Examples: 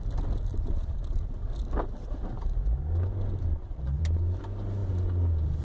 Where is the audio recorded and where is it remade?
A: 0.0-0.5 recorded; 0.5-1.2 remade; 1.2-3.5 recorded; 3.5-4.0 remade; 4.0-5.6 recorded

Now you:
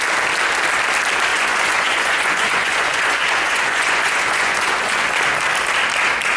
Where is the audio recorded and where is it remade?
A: 0.0-1.3 recorded; 1.3-5.1 remade; 5.1-6.4 recorded

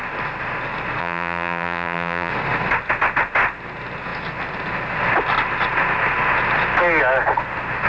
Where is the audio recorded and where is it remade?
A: 0.0-1.0 recorded; 1.0-2.3 remade; 2.3-7.9 recorded